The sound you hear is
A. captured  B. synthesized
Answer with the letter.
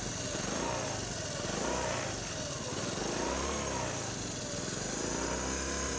A